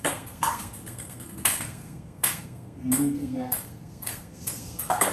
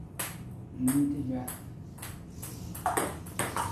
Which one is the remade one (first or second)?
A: first